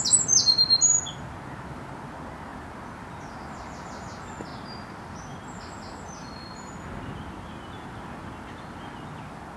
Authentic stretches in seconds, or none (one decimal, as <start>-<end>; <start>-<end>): 0.0-9.6